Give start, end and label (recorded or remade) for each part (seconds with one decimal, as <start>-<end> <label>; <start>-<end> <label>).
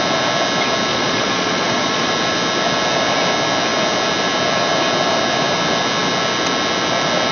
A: 0.0-0.9 recorded; 0.9-2.1 remade; 2.1-7.3 recorded